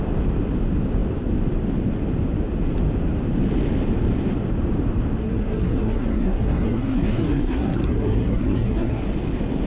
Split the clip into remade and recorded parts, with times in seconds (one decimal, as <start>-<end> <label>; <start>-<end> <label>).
0.0-5.2 recorded; 5.2-9.0 remade; 9.0-9.7 recorded